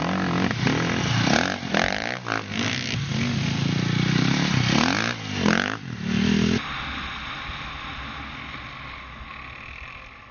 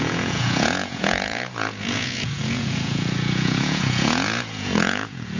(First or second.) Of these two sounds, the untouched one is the first